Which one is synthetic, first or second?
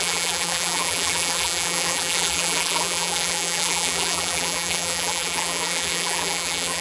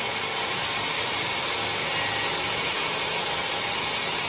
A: first